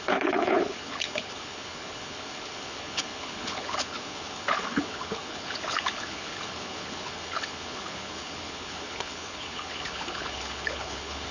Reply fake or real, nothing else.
fake